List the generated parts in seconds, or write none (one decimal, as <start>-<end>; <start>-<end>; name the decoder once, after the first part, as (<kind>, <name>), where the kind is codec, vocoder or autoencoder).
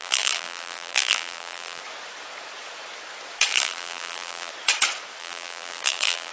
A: 0.0-1.8 (vocoder, BigVGAN v2); 3.5-4.5; 5.2-6.3